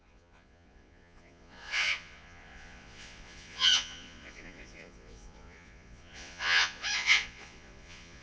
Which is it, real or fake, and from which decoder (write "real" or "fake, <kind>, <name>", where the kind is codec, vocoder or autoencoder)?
fake, vocoder, Vocos